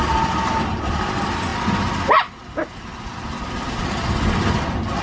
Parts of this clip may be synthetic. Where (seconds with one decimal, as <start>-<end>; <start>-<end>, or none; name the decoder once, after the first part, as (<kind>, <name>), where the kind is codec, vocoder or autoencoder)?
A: none